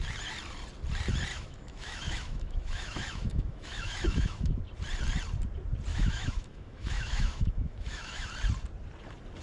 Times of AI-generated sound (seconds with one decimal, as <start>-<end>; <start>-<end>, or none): 1.3-4.6; 5.9-8.3